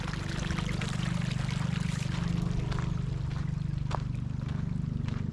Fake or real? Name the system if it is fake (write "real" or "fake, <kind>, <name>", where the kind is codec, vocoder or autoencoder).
real